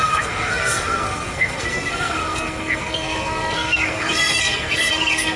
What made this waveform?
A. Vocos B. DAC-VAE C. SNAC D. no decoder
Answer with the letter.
C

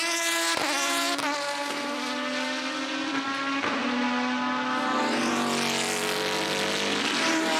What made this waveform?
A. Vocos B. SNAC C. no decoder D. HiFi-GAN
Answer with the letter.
C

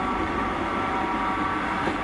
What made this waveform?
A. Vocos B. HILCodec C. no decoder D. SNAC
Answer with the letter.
C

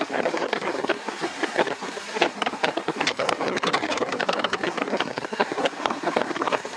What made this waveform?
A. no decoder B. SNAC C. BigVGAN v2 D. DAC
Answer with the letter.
B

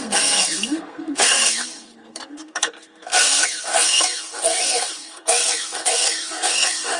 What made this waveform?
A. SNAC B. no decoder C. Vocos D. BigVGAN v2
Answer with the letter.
A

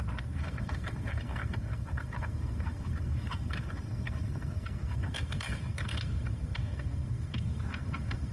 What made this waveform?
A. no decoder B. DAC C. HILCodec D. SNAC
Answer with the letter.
D